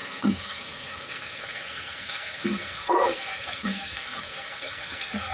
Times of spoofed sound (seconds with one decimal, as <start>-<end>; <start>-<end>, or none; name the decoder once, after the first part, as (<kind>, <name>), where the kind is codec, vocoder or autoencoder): 0.0-5.3 (codec, SNAC)